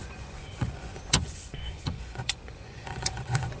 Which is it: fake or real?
fake